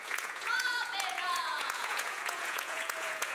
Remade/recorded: remade